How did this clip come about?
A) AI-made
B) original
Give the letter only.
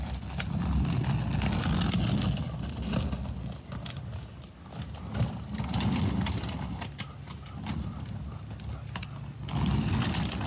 B